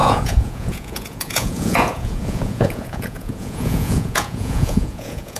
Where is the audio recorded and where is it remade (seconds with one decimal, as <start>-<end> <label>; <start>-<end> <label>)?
0.0-5.4 remade